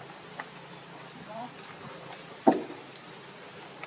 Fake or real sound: real